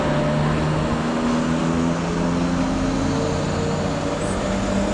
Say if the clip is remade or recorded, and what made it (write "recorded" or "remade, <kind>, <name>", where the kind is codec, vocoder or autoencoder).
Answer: recorded